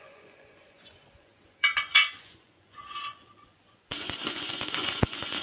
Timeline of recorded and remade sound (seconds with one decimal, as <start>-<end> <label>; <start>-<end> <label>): 0.0-5.4 remade